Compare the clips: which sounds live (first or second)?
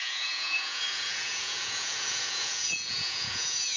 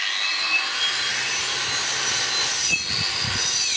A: second